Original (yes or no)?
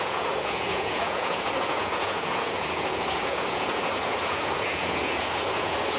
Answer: no